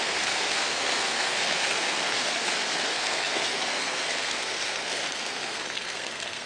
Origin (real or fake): fake